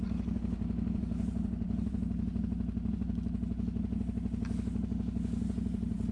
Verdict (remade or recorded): recorded